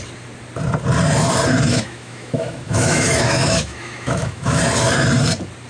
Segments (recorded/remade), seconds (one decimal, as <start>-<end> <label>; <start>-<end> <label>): 0.0-1.7 recorded; 1.7-4.6 remade; 4.6-5.7 recorded